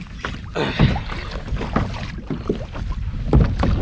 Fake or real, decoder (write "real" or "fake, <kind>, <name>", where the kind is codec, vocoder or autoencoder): real